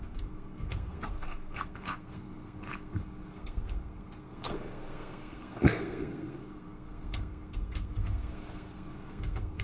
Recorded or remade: remade